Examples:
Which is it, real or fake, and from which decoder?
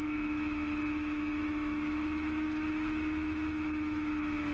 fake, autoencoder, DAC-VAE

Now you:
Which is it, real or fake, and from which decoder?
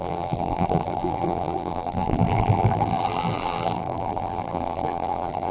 fake, vocoder, BigVGAN v2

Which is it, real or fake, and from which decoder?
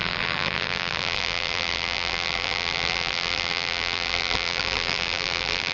fake, vocoder, BigVGAN v2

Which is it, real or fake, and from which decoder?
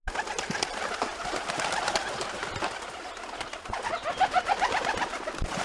real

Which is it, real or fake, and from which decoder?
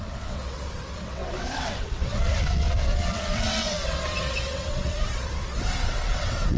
fake, vocoder, WaveNeXt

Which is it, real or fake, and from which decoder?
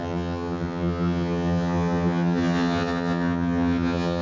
fake, vocoder, HiFi-GAN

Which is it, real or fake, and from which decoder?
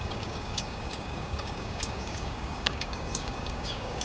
fake, codec, DAC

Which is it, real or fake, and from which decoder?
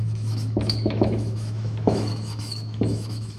fake, autoencoder, DAC-VAE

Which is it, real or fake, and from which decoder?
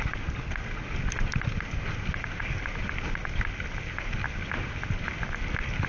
real